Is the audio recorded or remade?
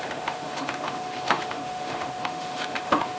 remade